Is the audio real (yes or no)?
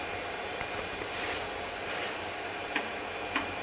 no